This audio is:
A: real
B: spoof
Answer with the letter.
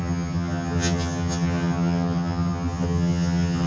B